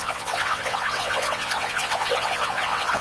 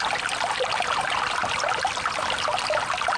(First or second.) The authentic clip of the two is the second